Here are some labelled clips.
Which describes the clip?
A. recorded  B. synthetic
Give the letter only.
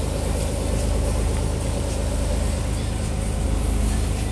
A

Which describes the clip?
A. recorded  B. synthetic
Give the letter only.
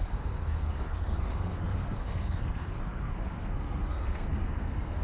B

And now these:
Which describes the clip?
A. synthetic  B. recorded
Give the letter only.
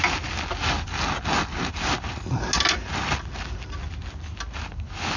B